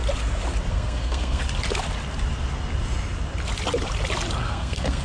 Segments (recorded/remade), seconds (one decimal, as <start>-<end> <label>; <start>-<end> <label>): 0.0-0.7 recorded; 0.7-1.4 remade; 1.4-4.4 recorded; 4.4-5.0 remade